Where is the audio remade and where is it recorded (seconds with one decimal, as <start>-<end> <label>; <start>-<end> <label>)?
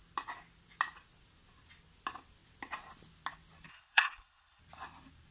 0.0-3.7 recorded; 3.7-4.6 remade; 4.6-5.3 recorded